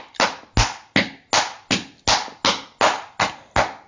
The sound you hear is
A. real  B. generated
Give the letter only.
A